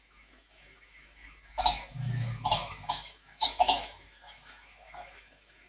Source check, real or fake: fake